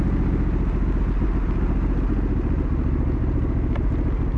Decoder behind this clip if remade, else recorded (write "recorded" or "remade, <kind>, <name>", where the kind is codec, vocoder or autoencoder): recorded